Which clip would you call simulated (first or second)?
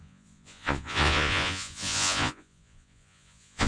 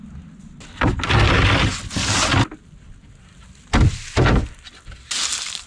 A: first